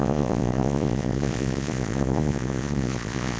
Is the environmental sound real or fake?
fake